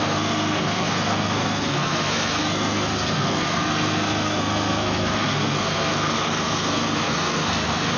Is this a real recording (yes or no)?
no